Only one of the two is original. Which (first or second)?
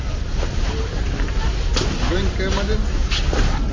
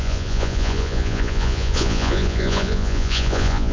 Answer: first